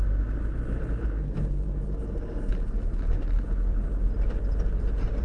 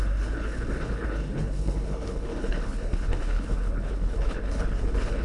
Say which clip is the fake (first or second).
second